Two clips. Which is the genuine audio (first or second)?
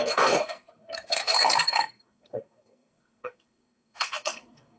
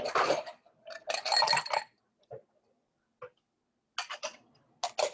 second